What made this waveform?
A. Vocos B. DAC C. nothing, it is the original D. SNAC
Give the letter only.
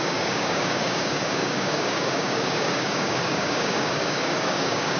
B